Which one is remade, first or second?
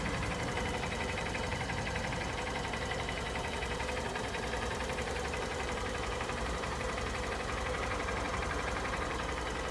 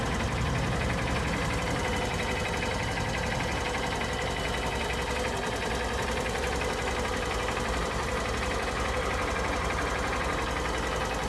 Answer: first